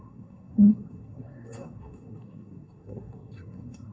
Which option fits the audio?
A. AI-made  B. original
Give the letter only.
A